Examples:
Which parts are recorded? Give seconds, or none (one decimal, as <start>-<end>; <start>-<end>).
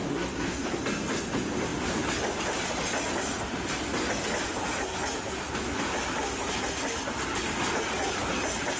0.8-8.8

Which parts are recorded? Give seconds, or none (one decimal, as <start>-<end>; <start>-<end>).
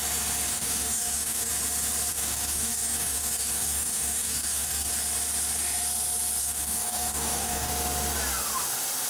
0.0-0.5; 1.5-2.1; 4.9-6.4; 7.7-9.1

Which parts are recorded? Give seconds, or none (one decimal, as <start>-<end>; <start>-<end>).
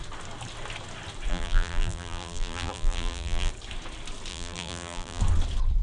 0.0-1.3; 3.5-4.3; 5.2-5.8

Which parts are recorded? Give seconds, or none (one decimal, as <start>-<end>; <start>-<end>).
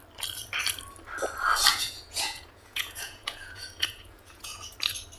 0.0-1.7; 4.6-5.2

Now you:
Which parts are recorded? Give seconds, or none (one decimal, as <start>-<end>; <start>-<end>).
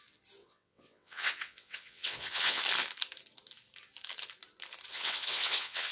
0.0-0.4; 2.6-4.9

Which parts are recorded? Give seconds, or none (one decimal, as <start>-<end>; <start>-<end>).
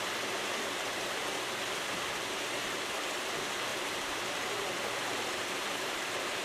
0.0-3.7